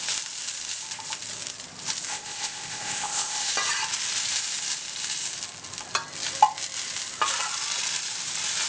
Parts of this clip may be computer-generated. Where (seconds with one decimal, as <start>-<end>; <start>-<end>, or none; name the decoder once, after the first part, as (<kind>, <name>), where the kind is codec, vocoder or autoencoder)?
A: 2.1-3.5 (codec, ZipCodec)

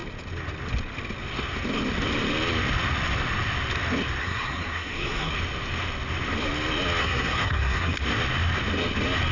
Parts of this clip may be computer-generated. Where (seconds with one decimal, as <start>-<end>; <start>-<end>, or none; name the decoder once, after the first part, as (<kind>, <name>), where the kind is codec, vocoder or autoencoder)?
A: 4.2-5.3 (codec, SNAC); 7.0-8.0

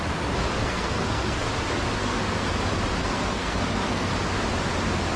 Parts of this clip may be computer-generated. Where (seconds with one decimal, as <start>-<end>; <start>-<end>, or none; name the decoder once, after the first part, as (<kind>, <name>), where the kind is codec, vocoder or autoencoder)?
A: 0.6-1.5 (codec, SNAC); 2.0-2.5; 3.0-4.1

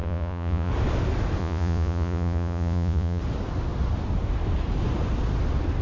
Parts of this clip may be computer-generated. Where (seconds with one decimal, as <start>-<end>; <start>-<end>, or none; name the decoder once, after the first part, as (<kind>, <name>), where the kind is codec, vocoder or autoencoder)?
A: 0.0-0.7 (vocoder, Vocos); 1.4-3.2

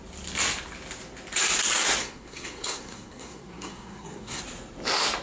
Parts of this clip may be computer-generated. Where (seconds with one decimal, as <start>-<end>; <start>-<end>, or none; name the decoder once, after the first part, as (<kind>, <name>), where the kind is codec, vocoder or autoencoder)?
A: 2.0-4.4 (codec, SNAC)

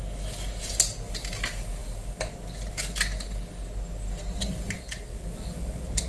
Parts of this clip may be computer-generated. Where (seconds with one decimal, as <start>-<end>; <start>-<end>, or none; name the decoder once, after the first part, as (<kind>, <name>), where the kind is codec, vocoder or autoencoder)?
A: none

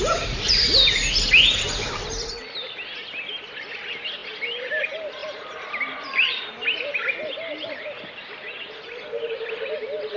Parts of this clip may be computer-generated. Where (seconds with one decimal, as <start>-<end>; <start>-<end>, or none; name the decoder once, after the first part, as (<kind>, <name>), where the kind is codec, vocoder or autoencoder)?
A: 5.2-6.5 (vocoder, BigVGAN v2)

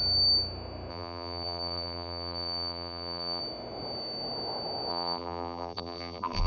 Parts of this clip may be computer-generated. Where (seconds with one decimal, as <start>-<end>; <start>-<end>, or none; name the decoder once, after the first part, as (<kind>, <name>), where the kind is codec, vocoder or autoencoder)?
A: 0.9-3.4 (vocoder, BigVGAN v2); 4.9-6.5